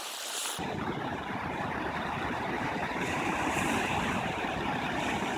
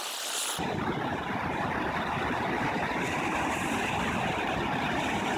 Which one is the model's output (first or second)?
first